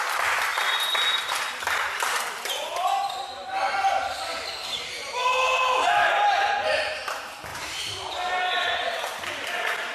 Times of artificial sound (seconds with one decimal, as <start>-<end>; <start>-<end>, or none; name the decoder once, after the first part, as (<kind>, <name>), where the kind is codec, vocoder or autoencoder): 7.5-8.1 (vocoder, BigVGAN v2)